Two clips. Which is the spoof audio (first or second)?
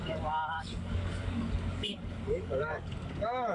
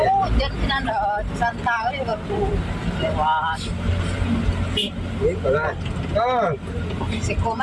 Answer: first